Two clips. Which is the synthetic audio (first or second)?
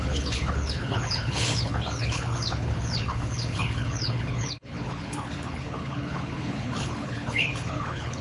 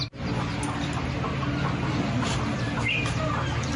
first